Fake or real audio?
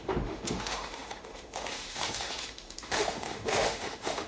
fake